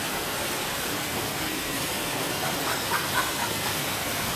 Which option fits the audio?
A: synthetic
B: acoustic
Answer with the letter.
A